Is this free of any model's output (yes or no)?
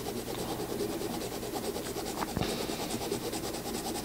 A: yes